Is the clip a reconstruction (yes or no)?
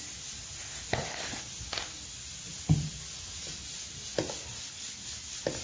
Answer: no